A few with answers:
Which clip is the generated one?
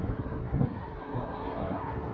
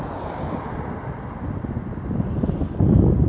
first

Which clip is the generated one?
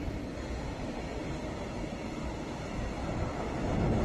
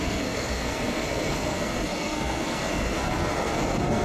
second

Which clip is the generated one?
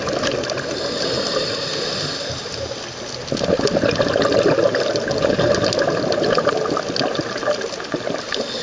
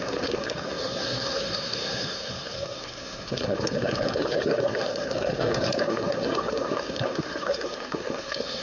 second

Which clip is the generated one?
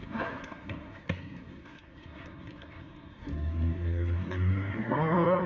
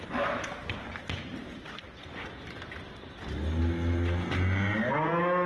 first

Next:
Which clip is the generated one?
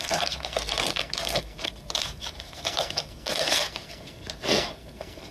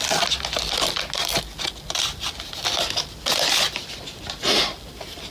first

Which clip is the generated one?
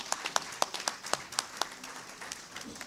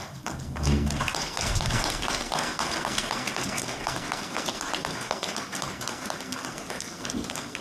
second